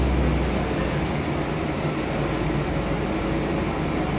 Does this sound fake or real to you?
real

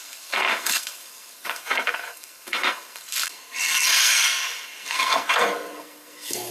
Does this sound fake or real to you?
fake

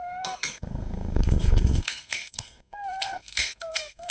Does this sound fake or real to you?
fake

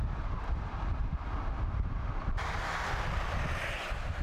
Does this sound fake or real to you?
real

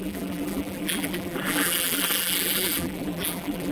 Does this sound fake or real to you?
fake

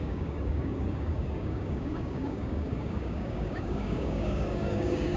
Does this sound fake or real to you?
fake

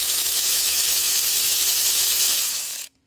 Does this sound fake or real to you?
fake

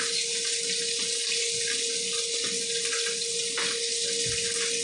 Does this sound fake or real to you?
real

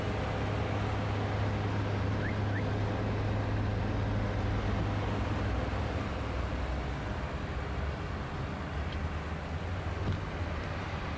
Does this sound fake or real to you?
real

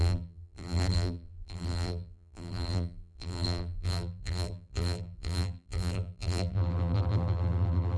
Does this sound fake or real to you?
fake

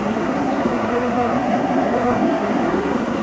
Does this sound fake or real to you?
fake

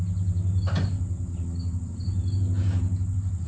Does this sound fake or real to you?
real